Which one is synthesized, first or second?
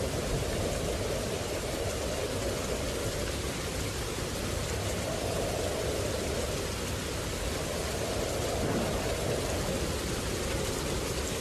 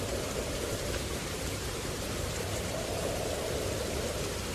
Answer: second